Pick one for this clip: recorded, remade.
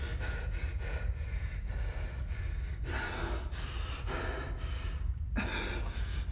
recorded